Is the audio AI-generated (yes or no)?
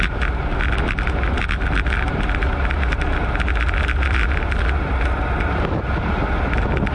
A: no